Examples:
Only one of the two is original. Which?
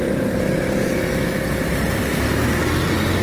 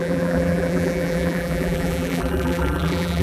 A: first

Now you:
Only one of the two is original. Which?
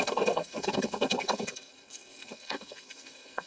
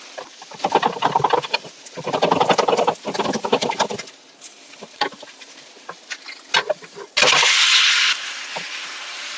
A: second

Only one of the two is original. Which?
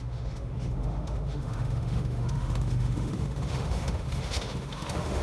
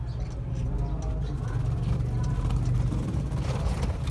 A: second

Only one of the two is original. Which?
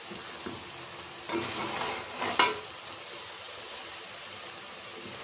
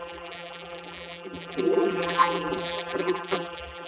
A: first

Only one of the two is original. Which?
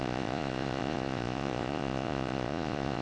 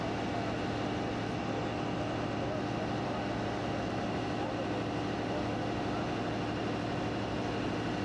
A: second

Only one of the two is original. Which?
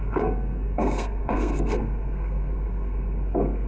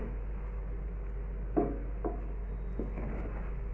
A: second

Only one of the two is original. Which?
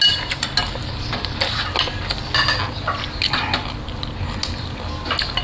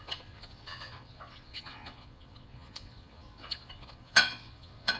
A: first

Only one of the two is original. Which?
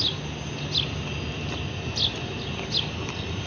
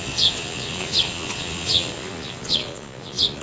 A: first